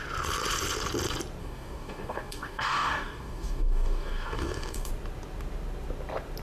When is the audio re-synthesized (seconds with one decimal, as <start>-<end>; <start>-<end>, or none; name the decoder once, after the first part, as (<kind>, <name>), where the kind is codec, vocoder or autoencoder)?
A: 1.4-4.9 (codec, DAC)